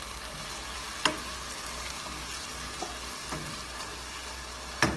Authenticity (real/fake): real